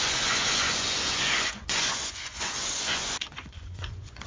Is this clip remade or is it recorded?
remade